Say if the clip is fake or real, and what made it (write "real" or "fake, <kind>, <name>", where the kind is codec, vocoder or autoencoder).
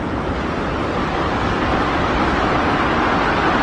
real